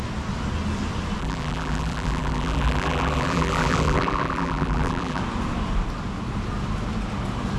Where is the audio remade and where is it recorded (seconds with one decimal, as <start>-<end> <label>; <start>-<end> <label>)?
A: 0.0-1.2 recorded; 1.2-5.2 remade; 5.2-7.6 recorded